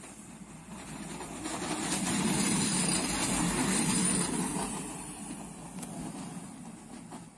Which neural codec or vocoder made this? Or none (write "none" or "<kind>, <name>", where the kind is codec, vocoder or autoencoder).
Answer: none